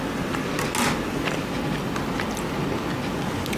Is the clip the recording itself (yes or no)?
yes